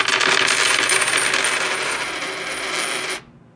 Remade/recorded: recorded